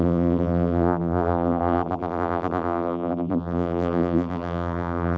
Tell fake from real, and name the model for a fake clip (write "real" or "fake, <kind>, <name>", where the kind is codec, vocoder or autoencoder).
fake, vocoder, BigVGAN v2